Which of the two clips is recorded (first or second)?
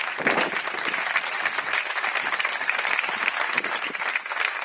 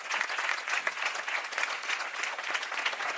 first